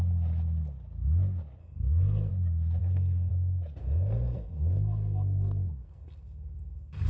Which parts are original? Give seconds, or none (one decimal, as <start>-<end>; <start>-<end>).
0.0-1.6; 2.3-2.8; 3.3-3.8